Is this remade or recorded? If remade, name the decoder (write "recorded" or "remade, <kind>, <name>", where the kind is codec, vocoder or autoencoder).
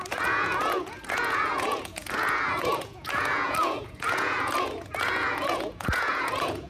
remade, vocoder, Vocos